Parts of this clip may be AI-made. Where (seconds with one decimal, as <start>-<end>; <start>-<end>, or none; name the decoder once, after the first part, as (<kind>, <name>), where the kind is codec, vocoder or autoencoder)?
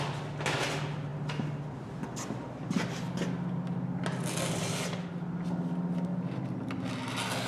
none